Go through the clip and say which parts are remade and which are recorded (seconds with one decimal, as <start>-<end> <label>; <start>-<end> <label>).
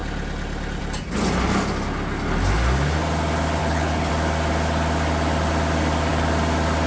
0.0-3.6 recorded; 3.6-4.1 remade; 4.1-6.9 recorded